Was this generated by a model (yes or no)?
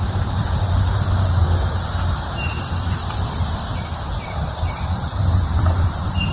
yes